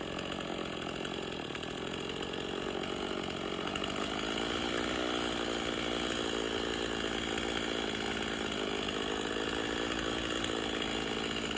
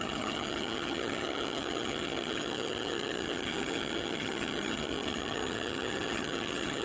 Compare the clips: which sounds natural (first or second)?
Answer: first